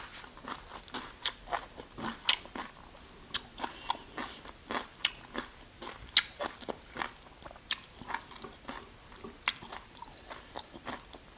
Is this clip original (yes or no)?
yes